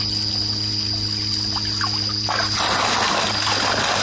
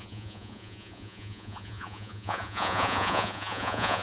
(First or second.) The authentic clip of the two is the first